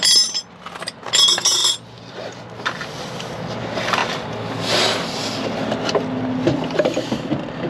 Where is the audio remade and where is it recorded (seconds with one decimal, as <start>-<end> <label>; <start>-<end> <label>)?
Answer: 0.0-7.7 recorded